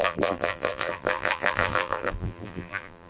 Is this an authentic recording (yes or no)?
no